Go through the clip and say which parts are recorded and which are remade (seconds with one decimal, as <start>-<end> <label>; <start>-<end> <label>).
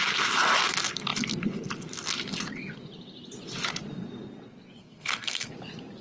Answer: 0.0-4.8 recorded; 4.8-5.5 remade; 5.5-6.0 recorded